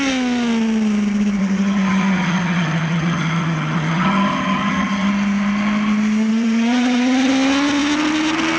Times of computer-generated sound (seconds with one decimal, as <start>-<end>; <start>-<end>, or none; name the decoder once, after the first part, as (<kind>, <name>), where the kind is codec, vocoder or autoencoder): 1.4-5.1 (vocoder, HiFi-GAN); 6.3-7.3